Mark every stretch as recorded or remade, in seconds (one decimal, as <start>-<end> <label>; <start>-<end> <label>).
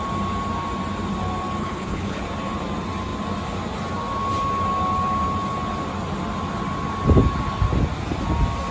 0.0-1.6 recorded; 1.6-2.2 remade; 2.2-8.7 recorded